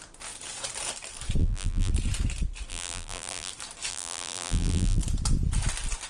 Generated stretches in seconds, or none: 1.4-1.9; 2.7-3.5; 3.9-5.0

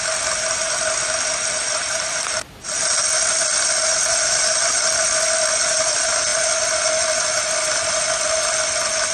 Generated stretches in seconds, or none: none

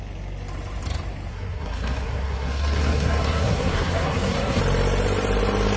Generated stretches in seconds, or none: 1.3-4.6

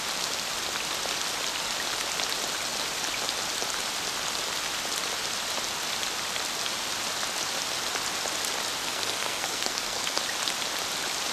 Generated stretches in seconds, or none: 8.8-10.2

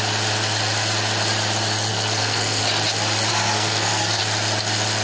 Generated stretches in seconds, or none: 1.9-2.6; 3.3-4.2

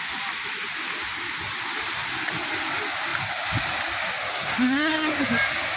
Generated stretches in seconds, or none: 4.3-5.2

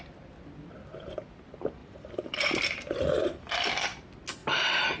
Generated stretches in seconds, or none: 1.8-3.7; 4.4-5.0